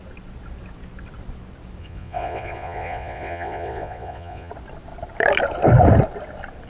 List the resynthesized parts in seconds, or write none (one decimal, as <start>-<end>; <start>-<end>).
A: 1.8-4.5